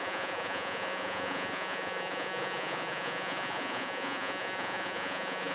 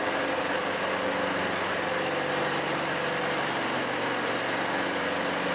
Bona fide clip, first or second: second